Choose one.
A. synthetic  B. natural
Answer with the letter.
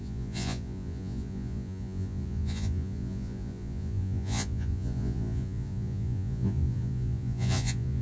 A